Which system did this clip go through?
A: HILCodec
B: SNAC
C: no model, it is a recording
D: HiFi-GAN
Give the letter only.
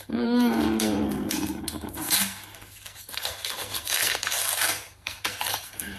B